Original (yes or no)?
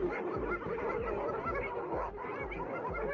yes